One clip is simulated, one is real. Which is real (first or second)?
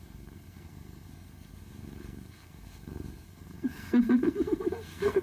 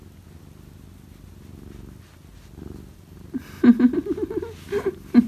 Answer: second